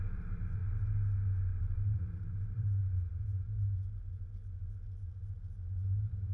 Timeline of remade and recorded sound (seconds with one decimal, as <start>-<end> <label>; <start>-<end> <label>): 0.0-0.6 remade; 0.6-1.6 recorded; 1.6-2.8 remade; 2.8-6.3 recorded